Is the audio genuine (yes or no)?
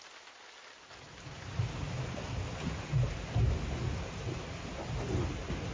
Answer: yes